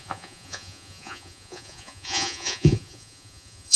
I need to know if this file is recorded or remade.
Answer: remade